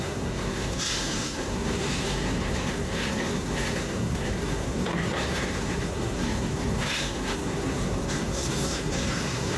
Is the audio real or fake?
fake